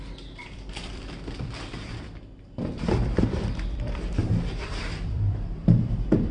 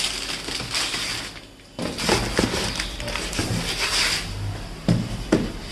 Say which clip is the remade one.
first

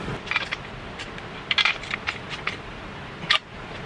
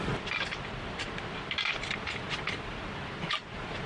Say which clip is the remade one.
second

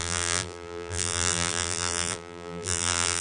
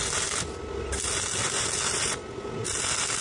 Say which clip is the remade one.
first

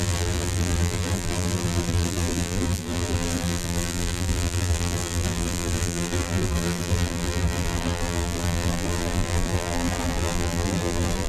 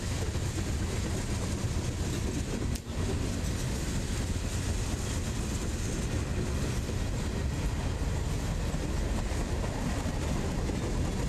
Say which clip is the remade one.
first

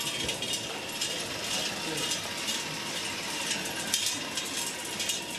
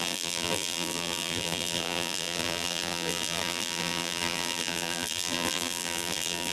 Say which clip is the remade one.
second